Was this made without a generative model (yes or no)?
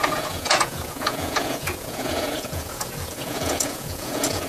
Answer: no